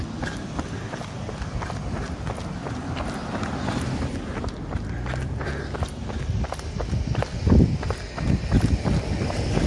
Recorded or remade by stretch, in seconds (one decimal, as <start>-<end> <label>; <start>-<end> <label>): 0.0-9.7 recorded